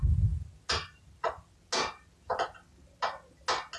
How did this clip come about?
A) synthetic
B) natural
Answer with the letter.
B